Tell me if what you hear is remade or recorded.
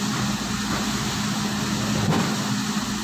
recorded